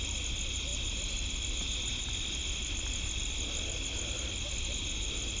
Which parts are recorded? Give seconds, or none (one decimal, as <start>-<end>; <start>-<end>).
0.0-5.4